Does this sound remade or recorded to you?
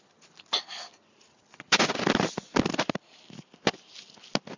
recorded